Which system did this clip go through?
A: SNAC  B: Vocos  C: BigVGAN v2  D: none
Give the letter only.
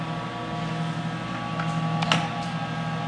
D